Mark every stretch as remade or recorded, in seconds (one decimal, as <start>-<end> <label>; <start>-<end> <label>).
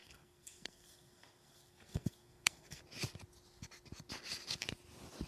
0.0-2.8 remade; 2.8-5.3 recorded